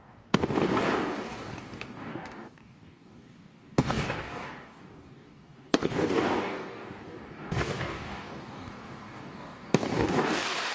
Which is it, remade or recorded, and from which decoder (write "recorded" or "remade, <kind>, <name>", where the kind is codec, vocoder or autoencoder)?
remade, codec, DAC